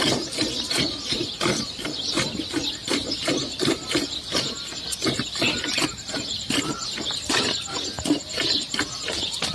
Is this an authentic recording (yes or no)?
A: yes